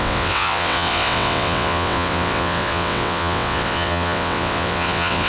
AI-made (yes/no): yes